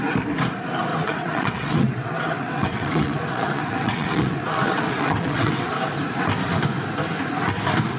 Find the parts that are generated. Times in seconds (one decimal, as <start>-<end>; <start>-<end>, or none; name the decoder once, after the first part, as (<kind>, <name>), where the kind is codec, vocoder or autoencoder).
0.9-5.7 (vocoder, WaveNeXt)